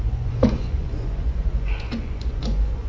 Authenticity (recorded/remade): remade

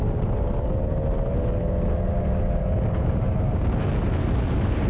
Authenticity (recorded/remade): recorded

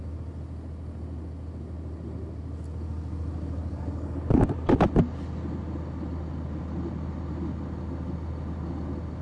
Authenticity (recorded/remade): recorded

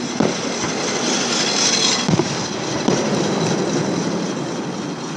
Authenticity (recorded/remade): recorded